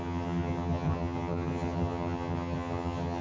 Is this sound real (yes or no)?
no